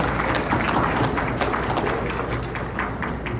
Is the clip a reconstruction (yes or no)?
no